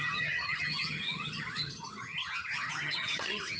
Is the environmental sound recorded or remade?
remade